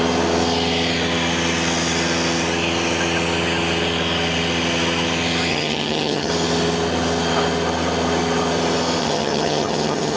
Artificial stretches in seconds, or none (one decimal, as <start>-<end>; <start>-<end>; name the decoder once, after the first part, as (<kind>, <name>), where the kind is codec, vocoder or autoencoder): 5.5-6.3 (vocoder, HiFi-GAN); 9.0-10.2

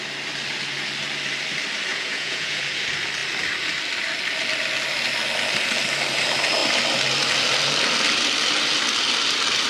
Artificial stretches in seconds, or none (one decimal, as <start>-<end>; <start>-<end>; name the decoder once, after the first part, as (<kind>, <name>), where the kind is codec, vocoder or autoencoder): 1.9-2.6 (vocoder, Vocos)

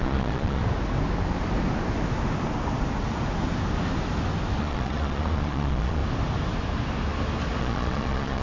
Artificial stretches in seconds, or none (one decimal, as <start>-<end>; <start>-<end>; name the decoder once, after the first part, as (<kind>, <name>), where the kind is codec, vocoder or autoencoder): 0.0-0.6 (vocoder, Vocos); 4.6-6.0; 7.6-8.4

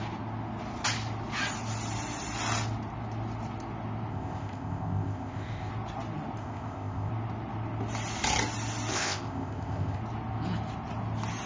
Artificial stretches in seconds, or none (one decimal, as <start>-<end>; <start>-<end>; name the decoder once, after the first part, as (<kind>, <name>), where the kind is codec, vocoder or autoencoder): 4.1-5.7 (codec, ZipCodec); 6.4-7.1; 8.9-10.0

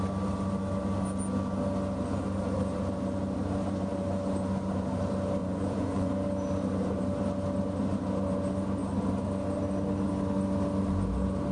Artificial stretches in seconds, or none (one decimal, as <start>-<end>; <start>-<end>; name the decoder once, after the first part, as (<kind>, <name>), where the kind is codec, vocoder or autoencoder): 5.4-6.1 (vocoder, Vocos)

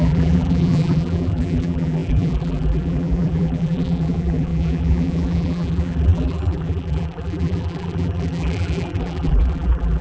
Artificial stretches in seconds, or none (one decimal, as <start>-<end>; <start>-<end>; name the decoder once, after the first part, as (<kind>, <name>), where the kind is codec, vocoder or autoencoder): 0.0-10.0 (vocoder, BigVGAN v2)

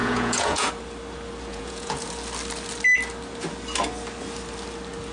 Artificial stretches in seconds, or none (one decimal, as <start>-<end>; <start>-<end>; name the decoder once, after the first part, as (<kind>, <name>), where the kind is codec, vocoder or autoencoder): 0.0-0.7 (vocoder, Vocos); 1.5-2.1

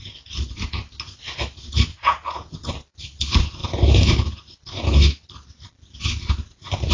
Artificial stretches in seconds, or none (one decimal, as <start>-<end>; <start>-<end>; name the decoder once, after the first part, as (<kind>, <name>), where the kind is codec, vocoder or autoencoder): 1.9-2.7 (vocoder, Vocos)